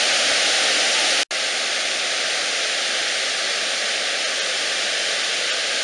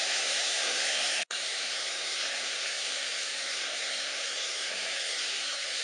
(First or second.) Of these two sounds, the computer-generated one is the second